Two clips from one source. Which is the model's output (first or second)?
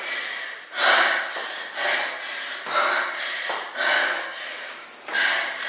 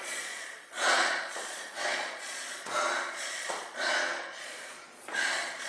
second